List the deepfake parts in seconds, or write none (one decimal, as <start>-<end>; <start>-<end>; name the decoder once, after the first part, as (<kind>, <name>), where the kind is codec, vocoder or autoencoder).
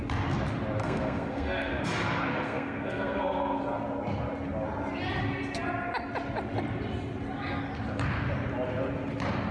0.8-1.8 (codec, SNAC); 2.3-3.6